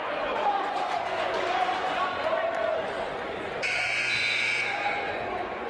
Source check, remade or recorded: remade